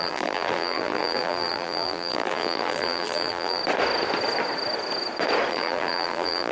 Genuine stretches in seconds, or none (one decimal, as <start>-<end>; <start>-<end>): 3.6-5.5